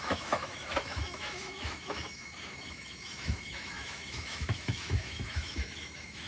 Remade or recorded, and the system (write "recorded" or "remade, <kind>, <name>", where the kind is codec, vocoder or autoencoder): remade, autoencoder, DAC-VAE